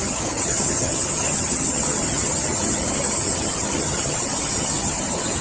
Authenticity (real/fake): fake